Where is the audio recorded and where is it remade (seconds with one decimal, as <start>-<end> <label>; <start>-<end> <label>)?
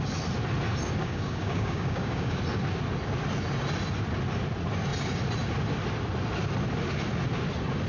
0.0-1.0 recorded; 1.0-2.4 remade; 2.4-7.9 recorded